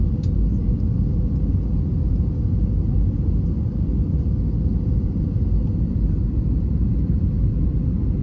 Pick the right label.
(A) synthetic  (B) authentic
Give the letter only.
B